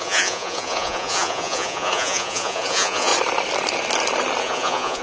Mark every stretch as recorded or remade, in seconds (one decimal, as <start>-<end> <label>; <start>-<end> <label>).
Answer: 0.0-3.1 remade; 3.1-4.4 recorded; 4.4-5.0 remade